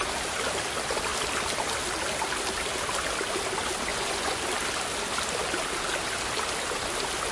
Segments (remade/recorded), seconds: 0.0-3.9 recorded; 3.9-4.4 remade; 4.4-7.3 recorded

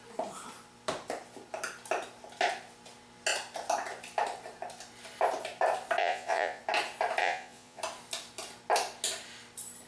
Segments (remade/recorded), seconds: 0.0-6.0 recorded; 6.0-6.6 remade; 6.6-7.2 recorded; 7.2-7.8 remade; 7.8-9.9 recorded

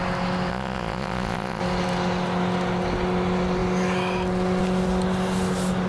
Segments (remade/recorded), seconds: 0.0-0.5 recorded; 0.5-1.6 remade; 1.6-5.9 recorded

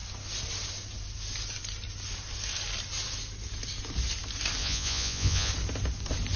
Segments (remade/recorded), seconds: 0.0-4.6 recorded; 4.6-5.5 remade; 5.5-6.4 recorded

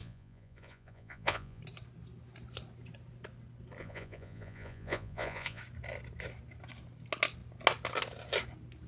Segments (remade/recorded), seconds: 0.0-1.6 remade; 1.6-3.8 recorded; 3.8-5.6 remade; 5.6-8.9 recorded

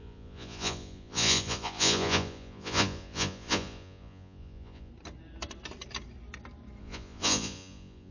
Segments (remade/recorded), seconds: 0.0-4.9 remade; 4.9-6.8 recorded; 6.8-8.1 remade